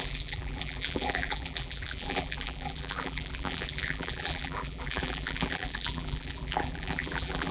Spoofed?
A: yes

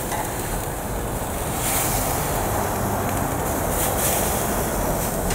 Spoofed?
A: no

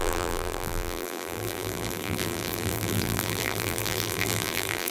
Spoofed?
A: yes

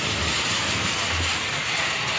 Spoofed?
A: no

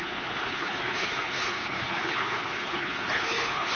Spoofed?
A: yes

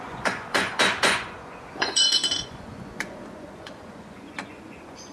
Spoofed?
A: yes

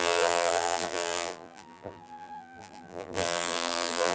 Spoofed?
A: yes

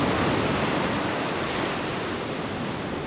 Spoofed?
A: no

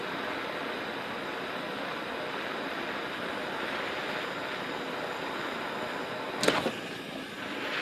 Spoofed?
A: no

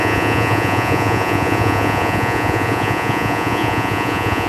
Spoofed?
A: yes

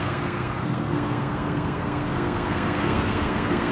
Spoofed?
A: yes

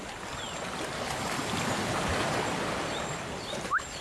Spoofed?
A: no